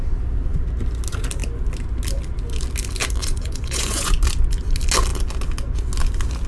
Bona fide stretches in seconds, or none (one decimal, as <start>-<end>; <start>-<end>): 0.0-3.2; 4.1-6.5